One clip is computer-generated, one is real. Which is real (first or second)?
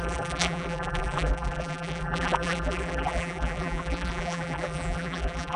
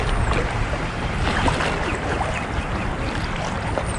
second